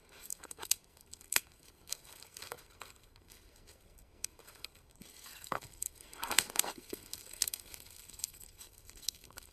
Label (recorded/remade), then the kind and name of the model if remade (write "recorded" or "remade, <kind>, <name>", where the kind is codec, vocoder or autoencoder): remade, codec, SNAC